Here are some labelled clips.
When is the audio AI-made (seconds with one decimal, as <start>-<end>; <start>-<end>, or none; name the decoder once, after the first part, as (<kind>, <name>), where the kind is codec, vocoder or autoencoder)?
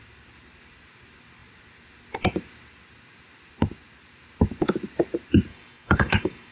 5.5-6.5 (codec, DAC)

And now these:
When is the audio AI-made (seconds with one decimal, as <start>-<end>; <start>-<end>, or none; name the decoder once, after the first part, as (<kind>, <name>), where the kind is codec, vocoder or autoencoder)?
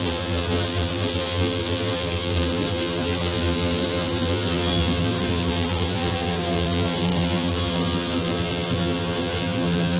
0.0-10.0 (vocoder, BigVGAN v2)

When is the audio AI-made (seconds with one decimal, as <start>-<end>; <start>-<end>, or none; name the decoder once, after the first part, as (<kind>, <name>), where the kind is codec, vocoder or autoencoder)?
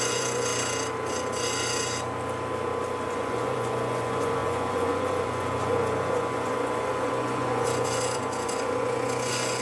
0.0-0.5 (vocoder, Vocos); 3.1-9.6